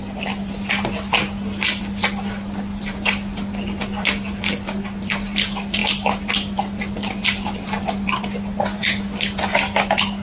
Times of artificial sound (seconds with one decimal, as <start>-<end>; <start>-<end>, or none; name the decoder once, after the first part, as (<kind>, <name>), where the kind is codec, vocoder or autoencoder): none

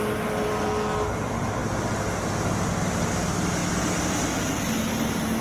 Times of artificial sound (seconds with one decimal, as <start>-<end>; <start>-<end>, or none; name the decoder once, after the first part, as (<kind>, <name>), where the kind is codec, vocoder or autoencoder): none